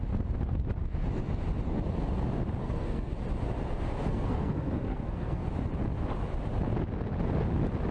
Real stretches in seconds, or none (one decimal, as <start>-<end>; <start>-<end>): 0.0-2.6; 3.1-4.1; 5.5-7.9